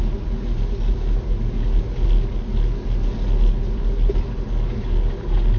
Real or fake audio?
real